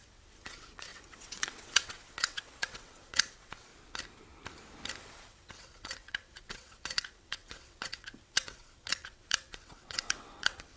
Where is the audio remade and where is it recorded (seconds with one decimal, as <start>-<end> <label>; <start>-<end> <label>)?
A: 0.0-3.7 remade; 3.7-5.0 recorded; 5.0-10.8 remade